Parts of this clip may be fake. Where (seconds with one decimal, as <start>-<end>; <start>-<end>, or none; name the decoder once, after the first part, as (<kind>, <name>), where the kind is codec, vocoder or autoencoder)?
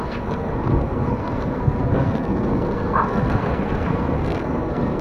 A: 0.0-5.0 (codec, SNAC)